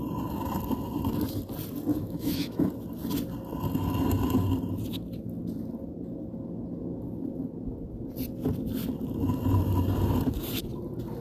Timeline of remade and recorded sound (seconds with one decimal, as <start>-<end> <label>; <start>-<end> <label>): 0.0-1.9 recorded; 1.9-2.7 remade; 2.7-11.2 recorded